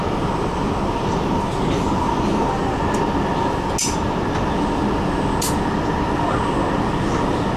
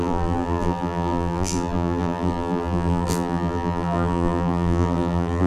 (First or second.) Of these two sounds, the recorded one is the first